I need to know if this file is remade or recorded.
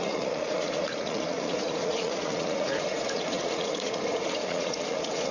remade